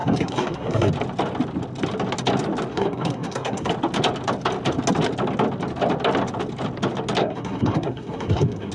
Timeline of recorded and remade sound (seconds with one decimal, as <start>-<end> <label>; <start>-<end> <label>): 0.0-0.9 remade; 0.9-2.7 recorded; 2.7-3.7 remade; 3.7-7.2 recorded; 7.2-8.7 remade